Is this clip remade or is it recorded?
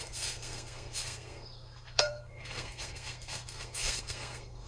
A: remade